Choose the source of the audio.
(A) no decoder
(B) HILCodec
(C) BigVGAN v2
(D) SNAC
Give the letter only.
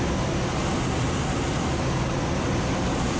A